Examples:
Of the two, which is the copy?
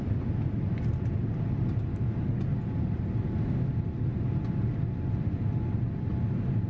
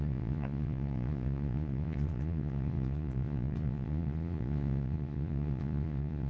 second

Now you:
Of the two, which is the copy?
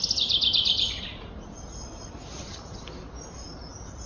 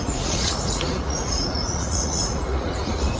second